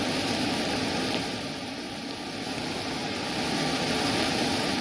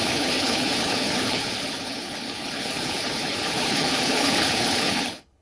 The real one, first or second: first